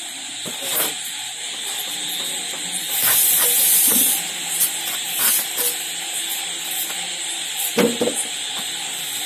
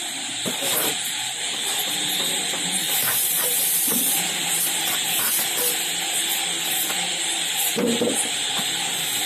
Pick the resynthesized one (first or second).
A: second